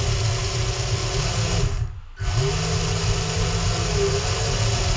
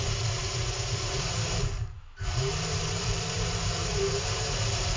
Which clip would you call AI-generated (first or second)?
second